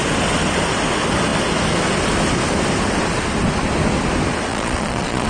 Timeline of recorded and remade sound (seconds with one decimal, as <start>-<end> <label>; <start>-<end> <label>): 0.0-4.5 recorded; 4.5-5.3 remade